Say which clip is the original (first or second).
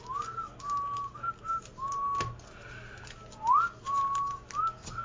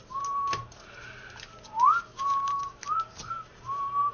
first